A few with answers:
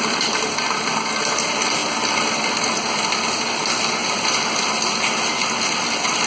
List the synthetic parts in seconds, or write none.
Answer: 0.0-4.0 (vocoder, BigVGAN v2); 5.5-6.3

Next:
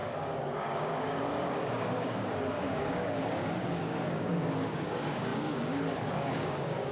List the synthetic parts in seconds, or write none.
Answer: 0.0-6.9 (codec, DAC)

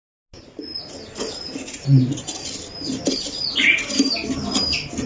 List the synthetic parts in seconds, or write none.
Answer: none

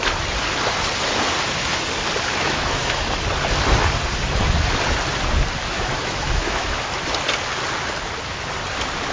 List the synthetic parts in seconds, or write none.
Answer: 2.3-3.0 (autoencoder, DAC-VAE); 5.6-6.9

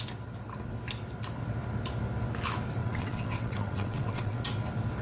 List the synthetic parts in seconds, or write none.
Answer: 2.8-4.4 (vocoder, WaveNeXt)